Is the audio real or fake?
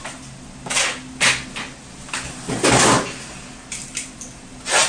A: real